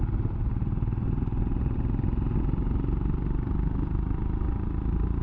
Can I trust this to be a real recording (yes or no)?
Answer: yes